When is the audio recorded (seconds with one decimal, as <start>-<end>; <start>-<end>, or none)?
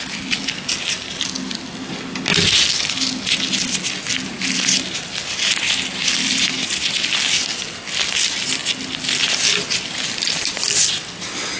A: 0.0-11.6